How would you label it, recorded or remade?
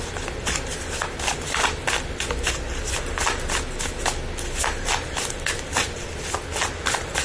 recorded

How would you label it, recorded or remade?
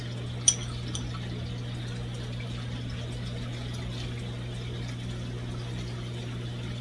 recorded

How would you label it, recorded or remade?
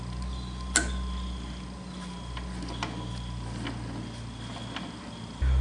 recorded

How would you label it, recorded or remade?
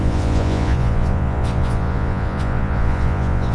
remade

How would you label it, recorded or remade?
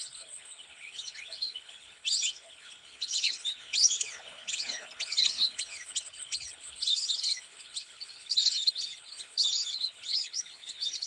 remade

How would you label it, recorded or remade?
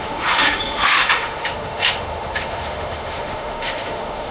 remade